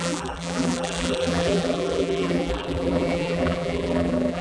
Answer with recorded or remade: remade